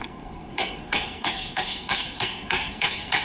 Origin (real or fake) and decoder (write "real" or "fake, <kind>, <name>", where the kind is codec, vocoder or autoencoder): fake, codec, SNAC